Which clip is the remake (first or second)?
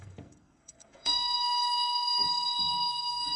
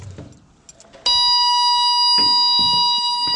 first